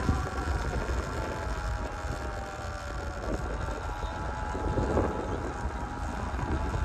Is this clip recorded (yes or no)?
yes